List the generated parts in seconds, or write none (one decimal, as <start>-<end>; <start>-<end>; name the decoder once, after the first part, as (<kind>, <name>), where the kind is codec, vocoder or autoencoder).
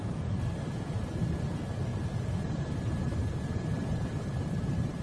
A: 1.9-5.0 (vocoder, BigVGAN v2)